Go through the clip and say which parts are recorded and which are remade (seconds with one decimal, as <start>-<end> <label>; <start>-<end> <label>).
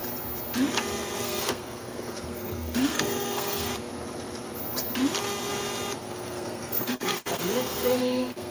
0.0-1.2 recorded; 1.2-3.7 remade; 3.7-6.0 recorded; 6.0-8.5 remade